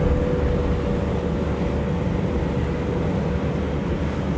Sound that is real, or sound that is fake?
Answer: real